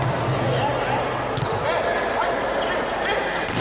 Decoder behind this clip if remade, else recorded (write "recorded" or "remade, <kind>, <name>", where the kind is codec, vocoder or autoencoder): recorded